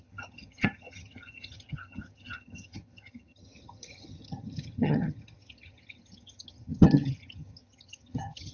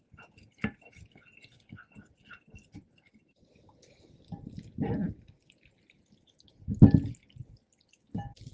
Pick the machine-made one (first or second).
first